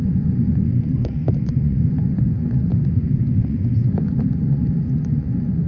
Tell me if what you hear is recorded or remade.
remade